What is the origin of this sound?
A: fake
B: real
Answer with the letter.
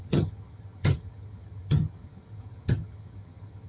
A